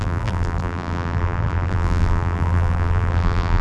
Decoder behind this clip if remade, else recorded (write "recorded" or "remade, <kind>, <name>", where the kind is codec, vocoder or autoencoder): remade, vocoder, BigVGAN v2